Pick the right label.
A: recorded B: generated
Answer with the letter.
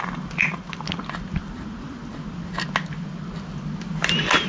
A